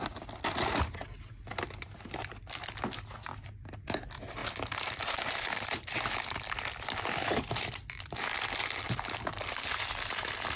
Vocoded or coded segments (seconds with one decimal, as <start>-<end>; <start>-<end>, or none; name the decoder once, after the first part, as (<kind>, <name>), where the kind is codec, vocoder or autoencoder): 4.4-5.9 (vocoder, BigVGAN v2)